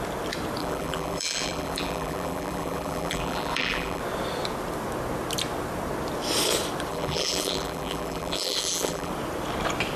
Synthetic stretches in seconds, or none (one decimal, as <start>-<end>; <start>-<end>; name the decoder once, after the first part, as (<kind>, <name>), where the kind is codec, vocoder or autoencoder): 0.6-4.0 (vocoder, BigVGAN v2); 6.9-9.1